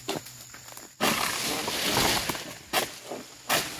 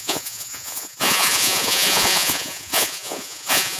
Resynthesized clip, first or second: second